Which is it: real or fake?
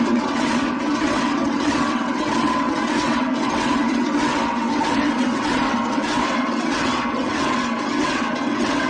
fake